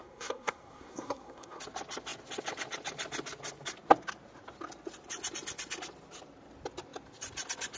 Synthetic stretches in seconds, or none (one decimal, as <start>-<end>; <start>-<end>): 0.0-1.6